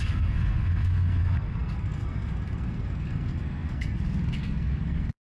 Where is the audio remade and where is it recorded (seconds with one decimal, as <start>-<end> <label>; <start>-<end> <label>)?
0.0-5.4 remade